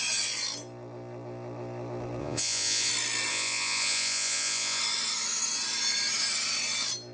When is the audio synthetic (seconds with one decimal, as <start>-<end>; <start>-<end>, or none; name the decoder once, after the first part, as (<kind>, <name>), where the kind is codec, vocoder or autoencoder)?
2.2-2.9 (vocoder, Vocos); 3.3-4.8